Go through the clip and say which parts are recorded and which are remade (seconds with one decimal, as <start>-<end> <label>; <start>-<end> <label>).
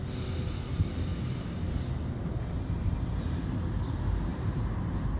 0.0-5.2 recorded